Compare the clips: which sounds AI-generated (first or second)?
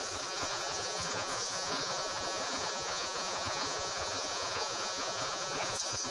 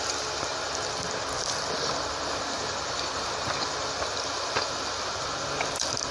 first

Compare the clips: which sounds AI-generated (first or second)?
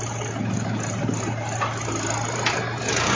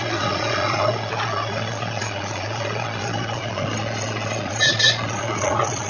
second